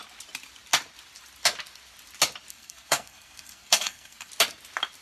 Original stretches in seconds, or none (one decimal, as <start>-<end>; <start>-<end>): 0.0-2.5; 4.3-5.0